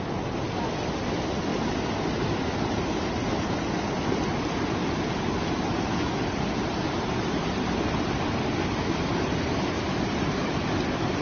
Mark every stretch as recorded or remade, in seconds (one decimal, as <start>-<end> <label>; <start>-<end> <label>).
0.0-11.2 recorded